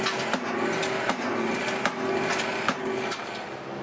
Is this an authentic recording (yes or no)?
yes